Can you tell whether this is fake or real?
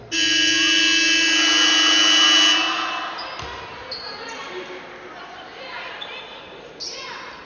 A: real